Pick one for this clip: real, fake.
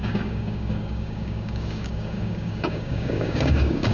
fake